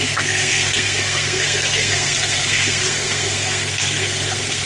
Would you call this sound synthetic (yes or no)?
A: yes